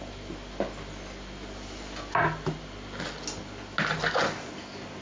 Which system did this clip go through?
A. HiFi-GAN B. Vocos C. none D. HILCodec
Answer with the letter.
C